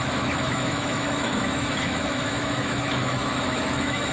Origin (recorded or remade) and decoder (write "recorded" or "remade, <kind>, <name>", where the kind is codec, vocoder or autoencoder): remade, autoencoder, DAC-VAE